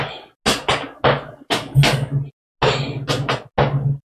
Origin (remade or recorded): recorded